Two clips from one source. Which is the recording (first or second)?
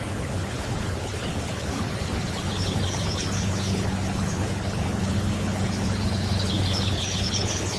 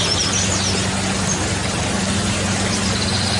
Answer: second